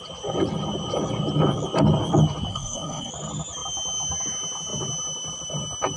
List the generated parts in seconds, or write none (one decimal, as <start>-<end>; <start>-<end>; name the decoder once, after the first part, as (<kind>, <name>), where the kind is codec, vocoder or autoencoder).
2.5-3.1 (codec, SNAC)